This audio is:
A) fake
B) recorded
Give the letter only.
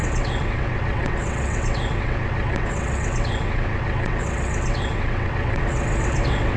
A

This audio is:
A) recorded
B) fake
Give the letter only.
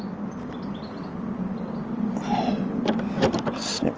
A